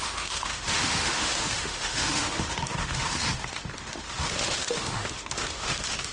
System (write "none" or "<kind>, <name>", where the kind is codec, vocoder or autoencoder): autoencoder, DAC-VAE